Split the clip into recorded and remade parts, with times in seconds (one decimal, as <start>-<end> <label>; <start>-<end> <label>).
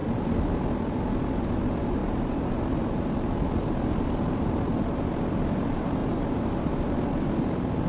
0.0-6.0 remade; 6.0-7.4 recorded; 7.4-7.9 remade